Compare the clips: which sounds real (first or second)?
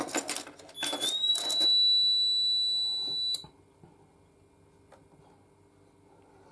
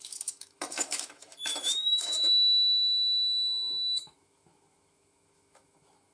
first